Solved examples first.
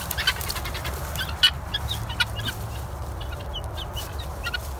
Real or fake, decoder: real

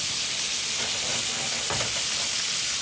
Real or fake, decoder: real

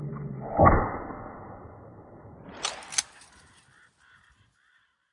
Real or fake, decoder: real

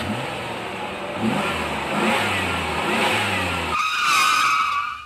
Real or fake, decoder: real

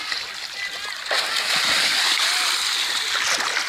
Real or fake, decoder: real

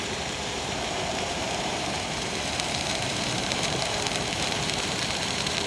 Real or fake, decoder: fake, vocoder, BigVGAN v2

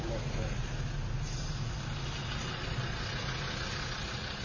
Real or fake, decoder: real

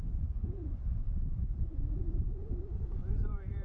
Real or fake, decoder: fake, vocoder, BigVGAN v2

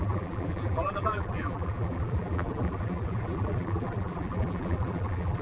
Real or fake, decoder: fake, vocoder, BigVGAN v2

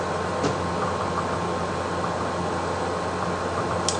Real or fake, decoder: real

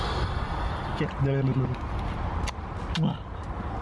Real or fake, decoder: real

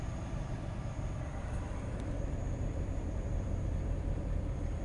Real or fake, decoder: fake, vocoder, BigVGAN v2